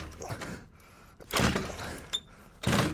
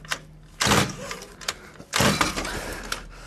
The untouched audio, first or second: second